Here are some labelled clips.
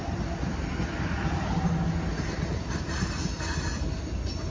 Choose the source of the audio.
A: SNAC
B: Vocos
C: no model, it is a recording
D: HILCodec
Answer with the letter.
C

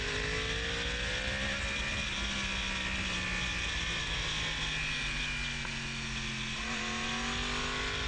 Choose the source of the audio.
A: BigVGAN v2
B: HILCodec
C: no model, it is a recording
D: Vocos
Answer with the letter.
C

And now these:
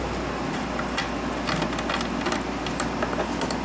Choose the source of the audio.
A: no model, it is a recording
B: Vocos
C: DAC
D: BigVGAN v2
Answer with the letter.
A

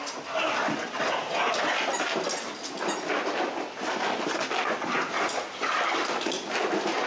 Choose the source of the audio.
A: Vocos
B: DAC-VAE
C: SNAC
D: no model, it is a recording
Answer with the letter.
D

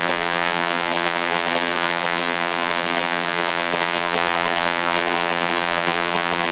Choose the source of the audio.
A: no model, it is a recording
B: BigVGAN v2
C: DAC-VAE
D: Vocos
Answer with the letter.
B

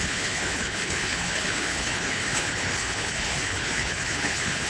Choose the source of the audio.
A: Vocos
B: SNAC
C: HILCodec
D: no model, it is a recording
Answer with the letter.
C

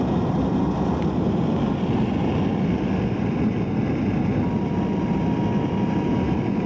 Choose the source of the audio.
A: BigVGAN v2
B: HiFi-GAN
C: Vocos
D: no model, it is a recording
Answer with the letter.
D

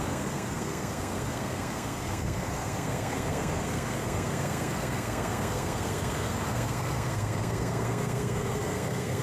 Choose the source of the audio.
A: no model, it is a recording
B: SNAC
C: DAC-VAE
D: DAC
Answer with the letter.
B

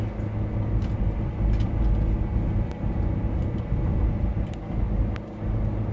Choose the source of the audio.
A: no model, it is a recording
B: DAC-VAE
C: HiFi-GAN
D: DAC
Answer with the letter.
A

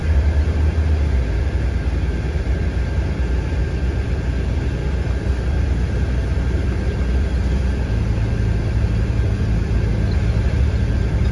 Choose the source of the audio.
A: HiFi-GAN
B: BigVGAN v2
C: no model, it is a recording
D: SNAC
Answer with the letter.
B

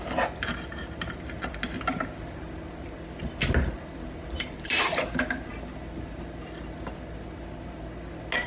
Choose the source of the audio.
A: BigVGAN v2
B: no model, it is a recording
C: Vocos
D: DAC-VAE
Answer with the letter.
B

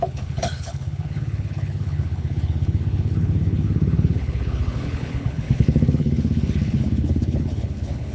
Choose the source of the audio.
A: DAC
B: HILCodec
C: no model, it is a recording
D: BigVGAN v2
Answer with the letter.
B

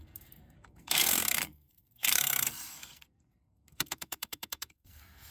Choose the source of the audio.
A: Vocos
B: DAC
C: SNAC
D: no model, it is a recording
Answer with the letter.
C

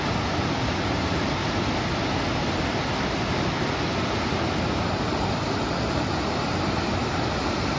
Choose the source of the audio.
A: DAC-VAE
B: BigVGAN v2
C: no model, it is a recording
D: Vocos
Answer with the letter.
C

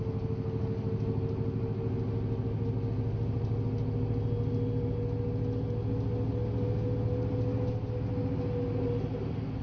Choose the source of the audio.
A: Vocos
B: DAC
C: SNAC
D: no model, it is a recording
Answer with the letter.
D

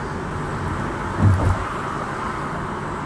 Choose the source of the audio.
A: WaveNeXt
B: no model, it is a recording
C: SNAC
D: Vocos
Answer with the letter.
B